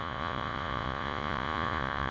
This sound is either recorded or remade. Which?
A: remade